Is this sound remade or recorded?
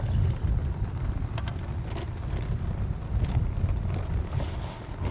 recorded